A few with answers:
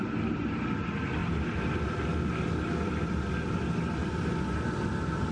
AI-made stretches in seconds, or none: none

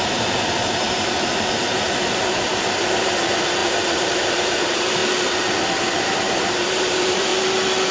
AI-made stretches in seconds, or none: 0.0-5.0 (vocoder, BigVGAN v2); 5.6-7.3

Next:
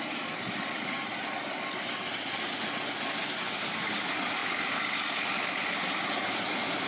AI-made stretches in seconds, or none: 4.4-5.0 (vocoder, BigVGAN v2)

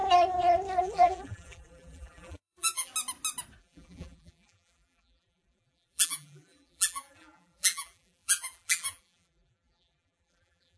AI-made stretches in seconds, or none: 0.8-2.9 (vocoder, BigVGAN v2); 3.6-10.8